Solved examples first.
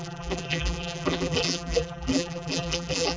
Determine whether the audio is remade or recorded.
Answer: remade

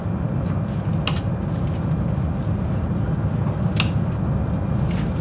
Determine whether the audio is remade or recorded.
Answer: recorded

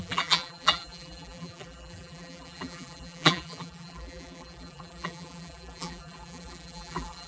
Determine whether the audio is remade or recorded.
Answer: remade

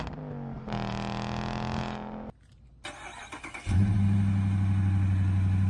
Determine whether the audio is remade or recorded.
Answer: recorded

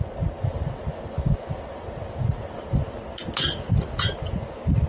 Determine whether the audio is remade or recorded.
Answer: recorded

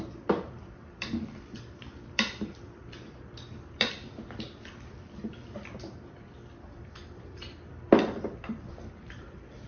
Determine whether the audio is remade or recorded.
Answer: remade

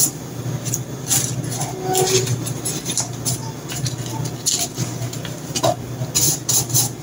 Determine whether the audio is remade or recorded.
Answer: remade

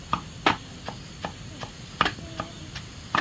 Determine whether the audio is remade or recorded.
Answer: recorded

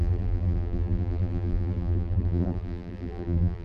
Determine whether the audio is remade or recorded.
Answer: remade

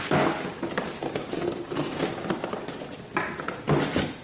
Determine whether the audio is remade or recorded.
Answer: remade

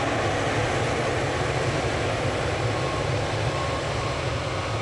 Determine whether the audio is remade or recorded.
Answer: recorded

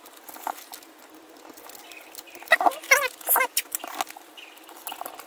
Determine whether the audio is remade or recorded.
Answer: recorded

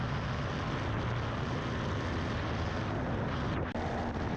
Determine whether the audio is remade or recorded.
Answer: recorded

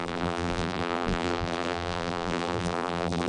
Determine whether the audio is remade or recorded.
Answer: remade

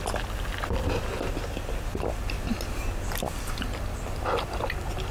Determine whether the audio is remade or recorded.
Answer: recorded